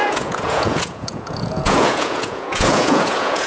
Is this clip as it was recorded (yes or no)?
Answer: no